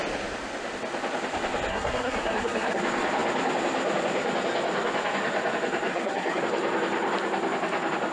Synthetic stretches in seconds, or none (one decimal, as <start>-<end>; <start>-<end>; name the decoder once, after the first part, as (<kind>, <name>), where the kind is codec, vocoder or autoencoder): 1.7-2.8 (codec, SNAC); 5.9-6.4